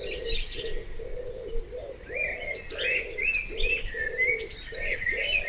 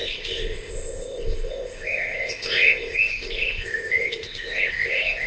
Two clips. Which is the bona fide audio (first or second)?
first